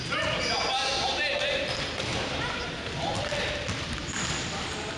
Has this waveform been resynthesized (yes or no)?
no